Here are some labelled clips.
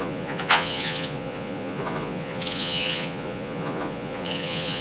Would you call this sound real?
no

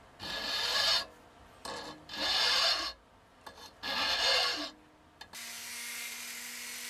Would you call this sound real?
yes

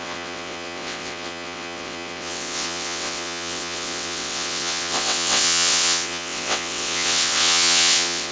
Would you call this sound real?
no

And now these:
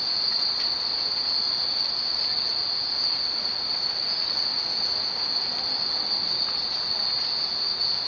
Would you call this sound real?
yes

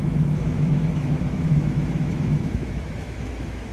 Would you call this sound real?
no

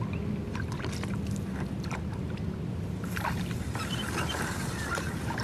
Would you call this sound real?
no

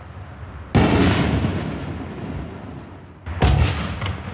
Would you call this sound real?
yes